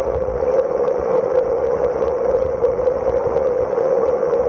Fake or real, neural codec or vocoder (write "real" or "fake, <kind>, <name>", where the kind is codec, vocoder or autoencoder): fake, vocoder, Vocos